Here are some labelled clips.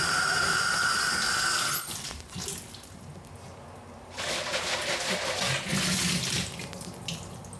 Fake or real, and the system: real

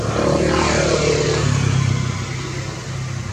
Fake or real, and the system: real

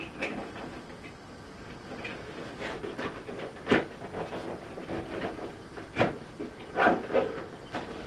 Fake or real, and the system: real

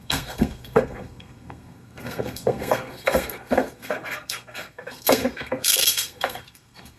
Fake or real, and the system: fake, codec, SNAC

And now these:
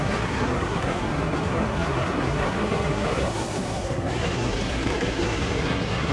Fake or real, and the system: fake, codec, SNAC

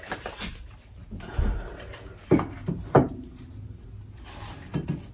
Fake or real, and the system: real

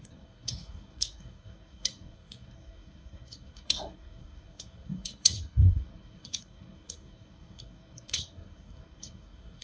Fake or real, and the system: fake, codec, SNAC